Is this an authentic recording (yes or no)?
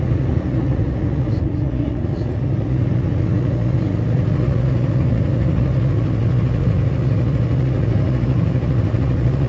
no